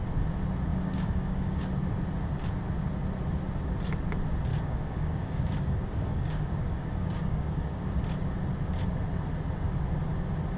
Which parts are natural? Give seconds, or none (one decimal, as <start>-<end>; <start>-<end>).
0.0-0.7; 1.6-4.5; 7.9-10.6